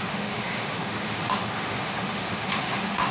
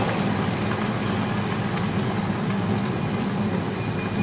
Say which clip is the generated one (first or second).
first